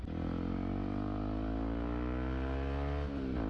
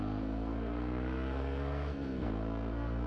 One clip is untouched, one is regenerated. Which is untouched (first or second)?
first